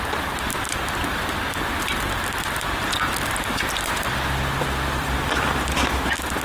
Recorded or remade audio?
remade